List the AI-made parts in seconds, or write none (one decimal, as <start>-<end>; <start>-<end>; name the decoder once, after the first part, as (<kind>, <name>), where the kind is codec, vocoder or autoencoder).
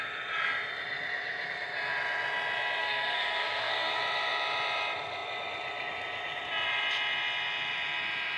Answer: 2.8-4.0 (codec, SNAC)